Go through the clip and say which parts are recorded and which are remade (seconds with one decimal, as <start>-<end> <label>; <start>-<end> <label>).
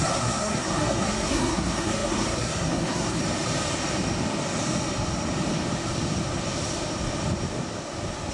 0.0-3.2 remade; 3.2-8.3 recorded